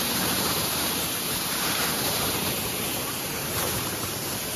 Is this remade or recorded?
remade